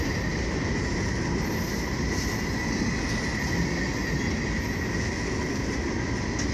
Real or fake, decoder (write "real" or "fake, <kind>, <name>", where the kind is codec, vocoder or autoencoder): real